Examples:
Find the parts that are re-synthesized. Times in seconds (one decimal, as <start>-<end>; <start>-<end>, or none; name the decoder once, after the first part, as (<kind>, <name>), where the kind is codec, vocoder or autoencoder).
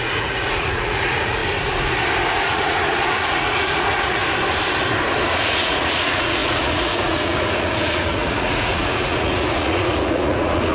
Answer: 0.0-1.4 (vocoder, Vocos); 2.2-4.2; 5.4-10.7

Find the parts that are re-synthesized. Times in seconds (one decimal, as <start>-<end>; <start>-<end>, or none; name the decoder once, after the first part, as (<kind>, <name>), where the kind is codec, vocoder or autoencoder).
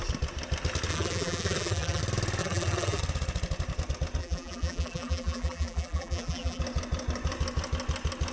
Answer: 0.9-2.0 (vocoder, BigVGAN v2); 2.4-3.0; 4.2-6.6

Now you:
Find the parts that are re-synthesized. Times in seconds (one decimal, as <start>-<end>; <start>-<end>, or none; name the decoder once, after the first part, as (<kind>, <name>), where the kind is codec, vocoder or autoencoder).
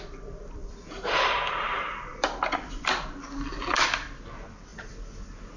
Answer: 0.0-5.6 (vocoder, BigVGAN v2)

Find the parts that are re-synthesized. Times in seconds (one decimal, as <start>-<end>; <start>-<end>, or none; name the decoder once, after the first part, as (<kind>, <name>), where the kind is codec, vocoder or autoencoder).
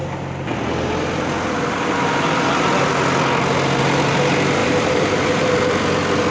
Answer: 4.6-5.6 (vocoder, BigVGAN v2)